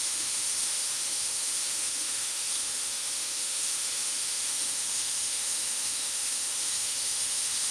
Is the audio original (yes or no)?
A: no